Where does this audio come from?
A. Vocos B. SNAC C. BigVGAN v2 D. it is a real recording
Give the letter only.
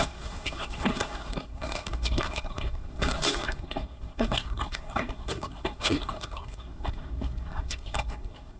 B